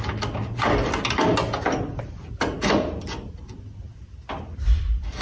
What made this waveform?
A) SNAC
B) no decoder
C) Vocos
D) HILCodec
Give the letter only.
B